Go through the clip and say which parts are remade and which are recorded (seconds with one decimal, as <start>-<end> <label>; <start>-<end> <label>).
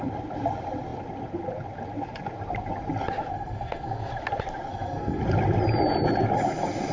0.0-3.3 recorded; 3.3-4.1 remade; 4.1-4.7 recorded; 4.7-5.2 remade; 5.2-6.9 recorded